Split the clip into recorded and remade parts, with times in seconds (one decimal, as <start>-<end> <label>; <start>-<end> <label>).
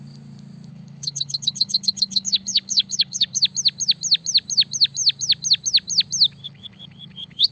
0.0-0.7 recorded; 0.7-3.4 remade; 3.4-6.4 recorded; 6.4-7.5 remade